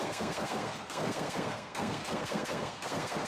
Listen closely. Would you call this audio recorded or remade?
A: remade